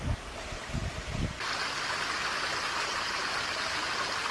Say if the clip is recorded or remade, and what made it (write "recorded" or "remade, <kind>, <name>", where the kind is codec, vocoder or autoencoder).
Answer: recorded